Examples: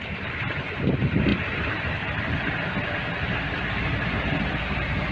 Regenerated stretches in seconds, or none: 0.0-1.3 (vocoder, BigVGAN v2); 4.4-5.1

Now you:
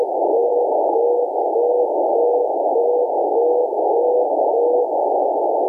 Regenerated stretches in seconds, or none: 0.0-5.7 (autoencoder, DAC-VAE)

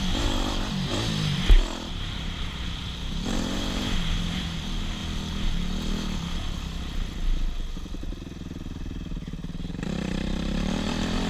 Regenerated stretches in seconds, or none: 0.0-0.9 (vocoder, BigVGAN v2); 1.9-5.0; 9.7-11.3